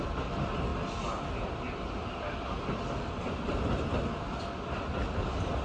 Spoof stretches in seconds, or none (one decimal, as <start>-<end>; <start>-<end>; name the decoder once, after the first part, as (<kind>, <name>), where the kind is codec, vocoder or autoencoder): none